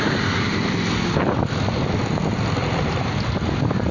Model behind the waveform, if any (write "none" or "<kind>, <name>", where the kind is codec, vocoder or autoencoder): none